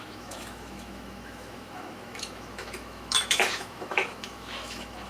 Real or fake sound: fake